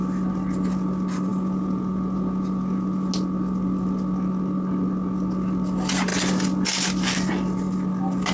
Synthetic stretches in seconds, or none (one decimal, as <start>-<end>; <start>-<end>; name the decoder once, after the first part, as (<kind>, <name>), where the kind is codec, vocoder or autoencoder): 1.3-3.1 (vocoder, Vocos)